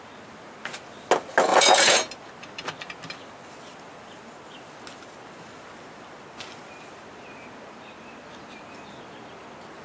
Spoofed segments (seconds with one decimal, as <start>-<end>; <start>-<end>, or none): 1.5-2.0